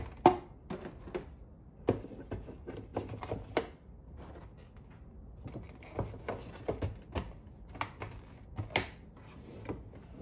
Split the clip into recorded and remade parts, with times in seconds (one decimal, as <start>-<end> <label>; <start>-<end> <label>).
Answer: 0.0-10.2 recorded